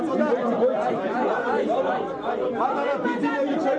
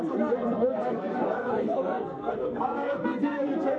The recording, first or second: first